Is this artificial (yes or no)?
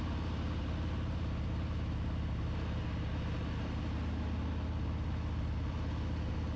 no